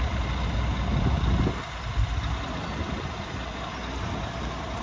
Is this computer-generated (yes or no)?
no